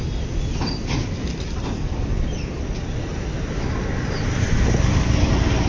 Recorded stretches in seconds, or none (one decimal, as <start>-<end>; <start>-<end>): 0.0-5.7